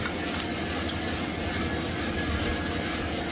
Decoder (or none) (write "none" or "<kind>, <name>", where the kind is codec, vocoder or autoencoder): none